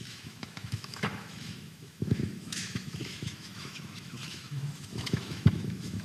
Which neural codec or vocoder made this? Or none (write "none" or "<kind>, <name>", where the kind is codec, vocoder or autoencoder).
autoencoder, DAC-VAE